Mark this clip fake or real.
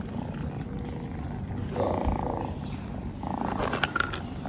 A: real